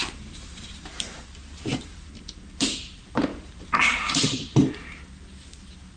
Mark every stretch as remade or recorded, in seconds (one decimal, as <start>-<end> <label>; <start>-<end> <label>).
0.0-1.2 remade; 1.2-3.3 recorded; 3.3-4.7 remade; 4.7-6.0 recorded